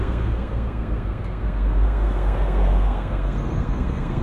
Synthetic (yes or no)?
yes